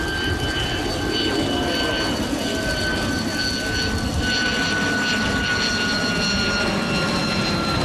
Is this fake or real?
real